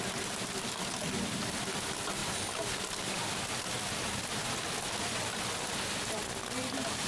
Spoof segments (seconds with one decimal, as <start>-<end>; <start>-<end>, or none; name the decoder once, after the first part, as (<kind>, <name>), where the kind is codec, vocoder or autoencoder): none